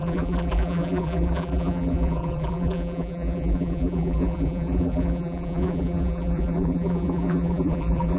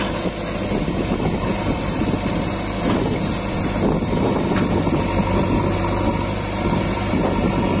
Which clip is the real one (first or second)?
second